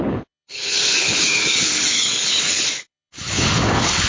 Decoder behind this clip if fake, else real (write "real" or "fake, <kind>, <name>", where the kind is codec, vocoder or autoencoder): fake, codec, HILCodec